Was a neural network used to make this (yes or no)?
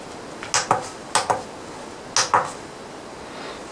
no